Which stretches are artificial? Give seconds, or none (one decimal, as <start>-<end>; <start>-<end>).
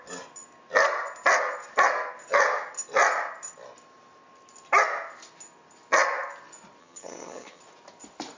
6.8-7.6